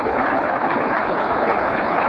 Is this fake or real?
fake